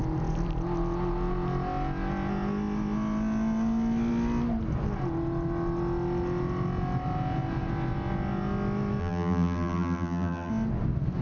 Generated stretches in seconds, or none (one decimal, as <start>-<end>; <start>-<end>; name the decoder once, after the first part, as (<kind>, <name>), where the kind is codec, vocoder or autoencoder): 9.0-10.5 (vocoder, BigVGAN v2)